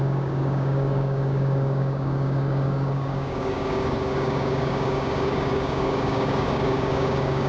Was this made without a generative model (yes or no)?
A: no